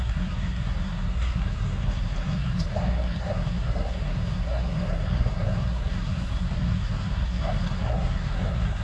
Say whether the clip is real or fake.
fake